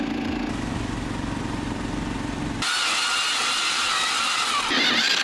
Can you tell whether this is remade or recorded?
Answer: recorded